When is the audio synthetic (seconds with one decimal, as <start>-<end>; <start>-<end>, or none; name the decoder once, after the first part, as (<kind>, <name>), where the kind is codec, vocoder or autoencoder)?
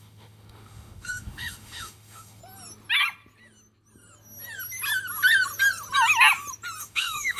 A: 0.0-2.4 (autoencoder, DAC-VAE); 6.8-7.4